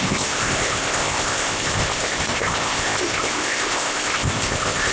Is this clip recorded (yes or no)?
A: no